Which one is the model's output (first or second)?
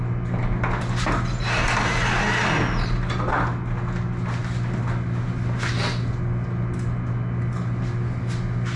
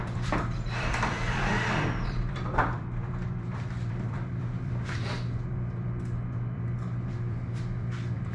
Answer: second